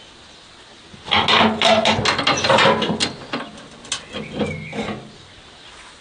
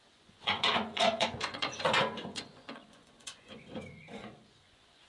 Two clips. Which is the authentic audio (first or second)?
first